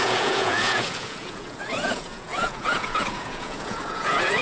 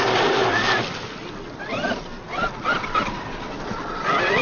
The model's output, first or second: first